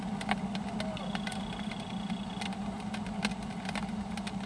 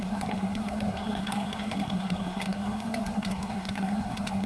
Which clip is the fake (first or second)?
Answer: second